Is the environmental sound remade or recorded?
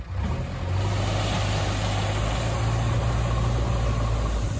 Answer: recorded